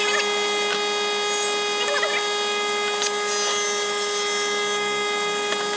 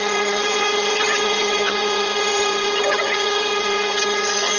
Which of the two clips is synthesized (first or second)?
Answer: second